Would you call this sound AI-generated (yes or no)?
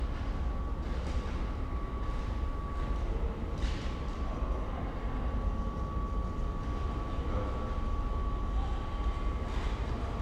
no